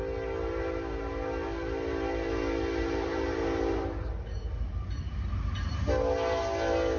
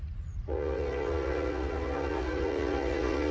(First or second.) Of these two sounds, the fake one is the second